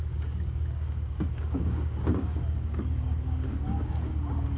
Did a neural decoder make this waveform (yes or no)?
yes